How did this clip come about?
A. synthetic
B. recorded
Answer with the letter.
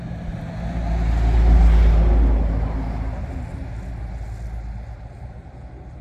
B